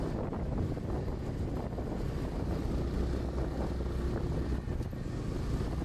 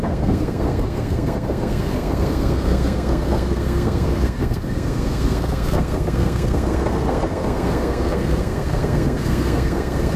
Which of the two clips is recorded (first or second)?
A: first